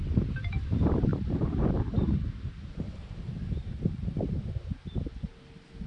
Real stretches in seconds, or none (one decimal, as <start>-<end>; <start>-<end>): 0.0-1.1; 4.6-5.9